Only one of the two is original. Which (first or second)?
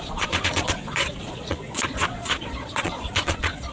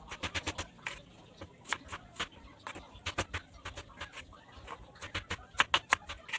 second